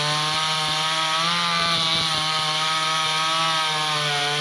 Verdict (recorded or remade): recorded